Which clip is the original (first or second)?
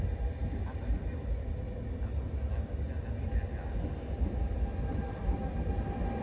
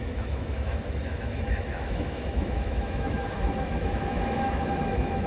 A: first